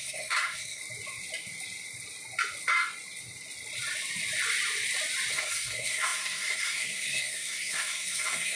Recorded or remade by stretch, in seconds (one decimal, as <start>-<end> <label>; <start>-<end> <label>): 0.0-0.8 remade; 0.8-5.3 recorded; 5.3-8.6 remade